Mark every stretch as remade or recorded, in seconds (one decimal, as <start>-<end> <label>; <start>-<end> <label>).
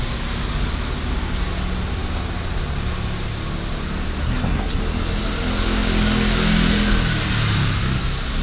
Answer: 0.0-4.2 recorded; 4.2-4.8 remade; 4.8-8.4 recorded